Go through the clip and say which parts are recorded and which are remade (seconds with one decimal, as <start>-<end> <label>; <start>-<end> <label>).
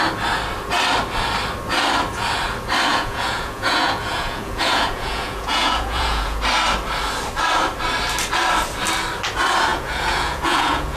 0.0-2.9 recorded; 2.9-6.4 remade; 6.4-9.7 recorded; 9.7-11.0 remade